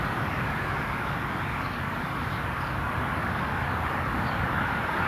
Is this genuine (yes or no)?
no